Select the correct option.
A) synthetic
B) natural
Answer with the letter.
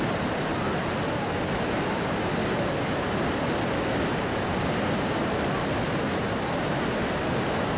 B